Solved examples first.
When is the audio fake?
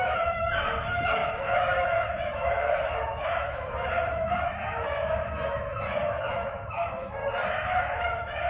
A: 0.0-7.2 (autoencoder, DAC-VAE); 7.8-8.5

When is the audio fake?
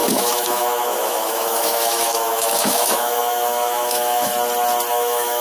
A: 0.0-4.3 (autoencoder, DAC-VAE); 4.9-5.4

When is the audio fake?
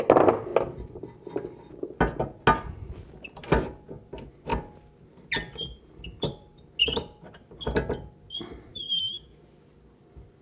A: 8.7-9.4 (autoencoder, DAC-VAE)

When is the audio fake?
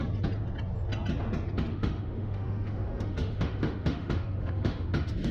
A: 1.7-5.3 (autoencoder, DAC-VAE)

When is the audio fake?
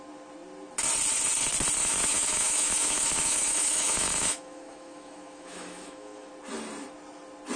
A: 1.8-6.3 (autoencoder, DAC-VAE)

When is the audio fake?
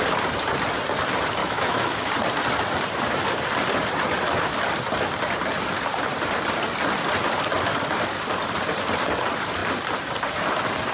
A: 1.4-2.1 (autoencoder, DAC-VAE)